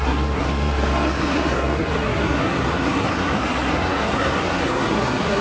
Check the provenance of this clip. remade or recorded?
remade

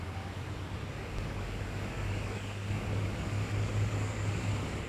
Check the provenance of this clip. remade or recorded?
remade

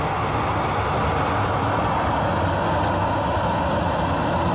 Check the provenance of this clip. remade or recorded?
recorded